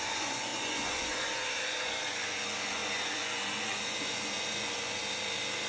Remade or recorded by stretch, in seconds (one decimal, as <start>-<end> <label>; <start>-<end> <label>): 0.0-5.0 remade; 5.0-5.7 recorded